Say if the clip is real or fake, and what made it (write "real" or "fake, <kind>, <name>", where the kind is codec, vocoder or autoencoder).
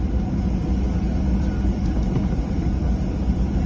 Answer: real